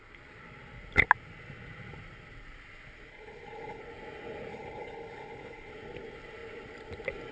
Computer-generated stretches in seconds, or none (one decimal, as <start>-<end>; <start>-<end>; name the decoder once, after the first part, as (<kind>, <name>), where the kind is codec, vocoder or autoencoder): 3.1-3.8 (codec, HILCodec); 4.5-5.7